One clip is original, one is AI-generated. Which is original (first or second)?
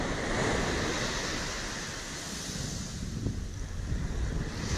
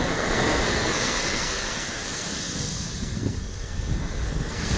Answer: first